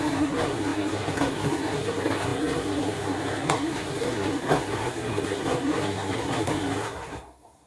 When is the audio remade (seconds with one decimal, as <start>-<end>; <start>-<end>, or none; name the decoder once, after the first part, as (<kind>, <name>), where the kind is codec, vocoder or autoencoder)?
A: 0.0-7.7 (codec, SNAC)